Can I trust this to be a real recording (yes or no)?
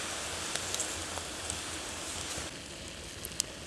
yes